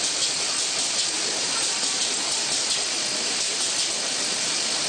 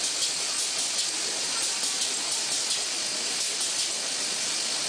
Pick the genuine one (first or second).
second